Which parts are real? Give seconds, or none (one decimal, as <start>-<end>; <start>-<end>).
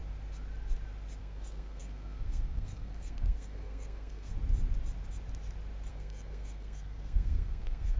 0.0-1.2; 4.3-5.9